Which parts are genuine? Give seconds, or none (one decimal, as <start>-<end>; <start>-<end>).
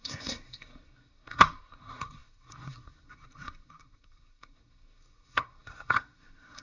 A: none